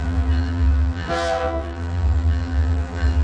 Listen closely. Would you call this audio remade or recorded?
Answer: remade